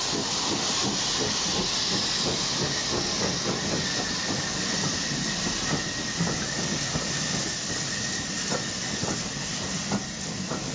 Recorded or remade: recorded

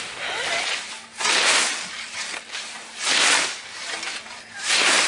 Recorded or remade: recorded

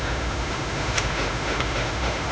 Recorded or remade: remade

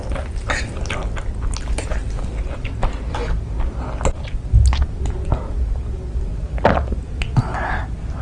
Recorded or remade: recorded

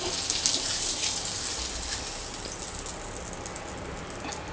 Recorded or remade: recorded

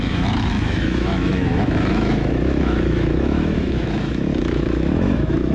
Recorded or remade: remade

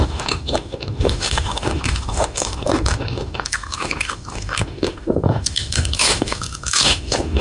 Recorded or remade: remade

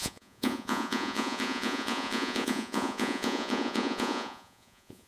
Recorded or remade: remade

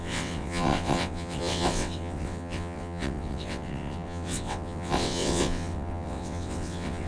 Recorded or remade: remade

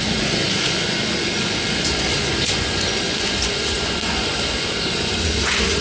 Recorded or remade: remade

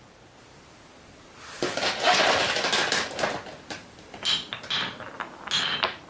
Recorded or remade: recorded